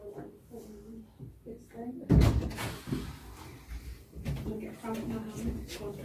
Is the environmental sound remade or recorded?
recorded